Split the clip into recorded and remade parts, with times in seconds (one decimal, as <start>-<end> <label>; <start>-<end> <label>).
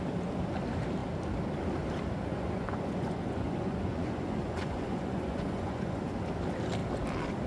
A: 0.0-2.3 recorded; 2.3-6.0 remade; 6.0-7.5 recorded